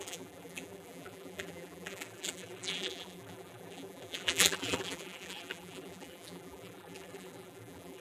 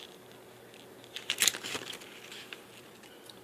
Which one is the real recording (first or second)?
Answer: second